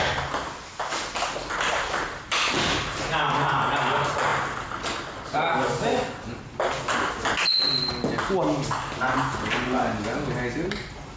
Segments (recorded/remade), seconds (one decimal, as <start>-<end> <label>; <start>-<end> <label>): 0.0-11.2 recorded